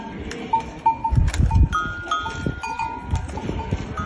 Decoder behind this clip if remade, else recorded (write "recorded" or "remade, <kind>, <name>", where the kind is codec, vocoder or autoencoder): recorded